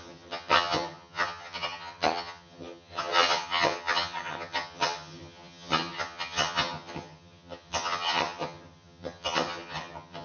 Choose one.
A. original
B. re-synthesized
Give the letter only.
B